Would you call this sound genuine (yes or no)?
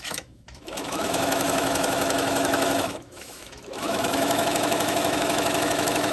no